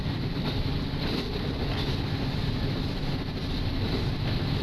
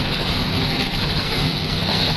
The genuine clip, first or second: first